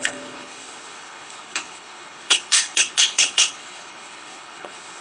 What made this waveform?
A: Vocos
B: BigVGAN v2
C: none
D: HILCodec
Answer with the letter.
D